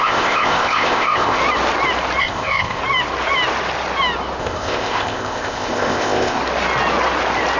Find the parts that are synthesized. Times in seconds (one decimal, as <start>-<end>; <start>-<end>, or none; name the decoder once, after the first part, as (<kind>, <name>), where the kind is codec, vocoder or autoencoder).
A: 0.0-1.4 (codec, ZipCodec); 2.2-2.8; 4.4-6.4